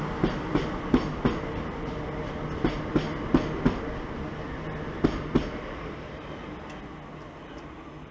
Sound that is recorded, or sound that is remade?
recorded